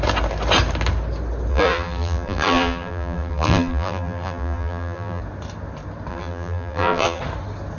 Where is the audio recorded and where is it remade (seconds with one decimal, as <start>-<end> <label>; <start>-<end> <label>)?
0.0-1.5 recorded; 1.5-5.2 remade; 5.2-6.1 recorded; 6.1-7.2 remade; 7.2-7.8 recorded